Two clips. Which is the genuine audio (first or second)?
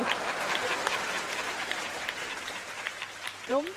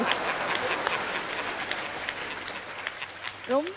second